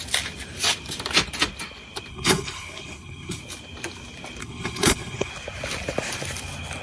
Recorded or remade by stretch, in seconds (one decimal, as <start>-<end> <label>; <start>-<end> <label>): 0.0-2.1 recorded; 2.1-3.4 remade; 3.4-4.4 recorded; 4.4-5.3 remade; 5.3-6.8 recorded